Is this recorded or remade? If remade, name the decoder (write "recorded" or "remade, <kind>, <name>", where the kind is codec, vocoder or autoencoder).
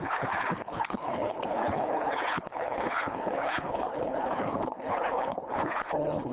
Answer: remade, codec, HILCodec